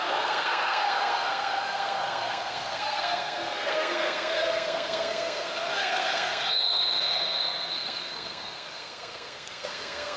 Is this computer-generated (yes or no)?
yes